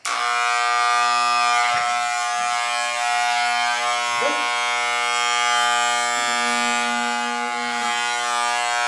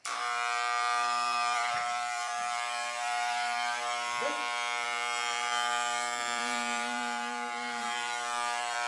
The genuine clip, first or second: first